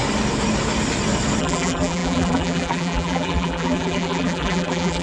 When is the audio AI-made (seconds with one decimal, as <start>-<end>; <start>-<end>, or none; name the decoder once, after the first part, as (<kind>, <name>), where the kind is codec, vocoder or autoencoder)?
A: 1.4-5.0 (vocoder, BigVGAN v2)